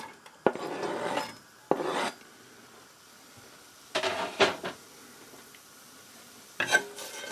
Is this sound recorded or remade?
recorded